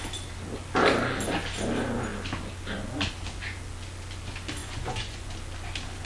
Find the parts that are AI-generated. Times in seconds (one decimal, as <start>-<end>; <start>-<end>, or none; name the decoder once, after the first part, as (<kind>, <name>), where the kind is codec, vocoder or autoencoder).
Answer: 4.6-5.3 (vocoder, Vocos)